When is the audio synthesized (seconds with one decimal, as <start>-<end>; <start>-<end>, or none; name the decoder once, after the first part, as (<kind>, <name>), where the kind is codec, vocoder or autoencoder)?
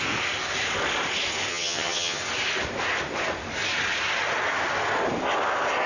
1.5-2.2 (vocoder, HiFi-GAN)